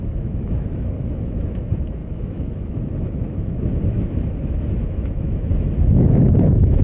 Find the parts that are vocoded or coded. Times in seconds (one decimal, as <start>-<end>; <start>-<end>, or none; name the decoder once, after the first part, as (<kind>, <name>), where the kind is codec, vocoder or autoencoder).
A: 0.0-6.8 (autoencoder, DAC-VAE)